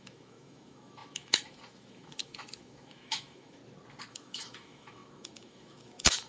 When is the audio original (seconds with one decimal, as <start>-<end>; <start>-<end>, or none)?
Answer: 3.6-4.1